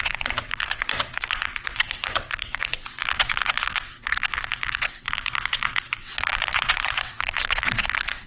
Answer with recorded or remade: remade